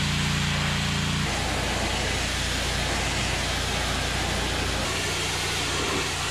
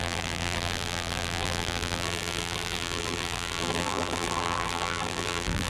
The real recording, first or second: first